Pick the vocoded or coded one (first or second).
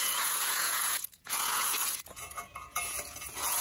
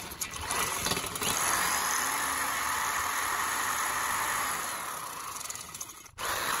first